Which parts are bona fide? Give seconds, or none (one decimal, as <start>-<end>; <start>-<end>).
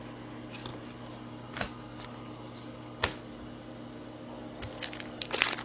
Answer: 0.0-5.6